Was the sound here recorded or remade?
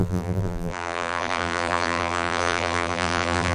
remade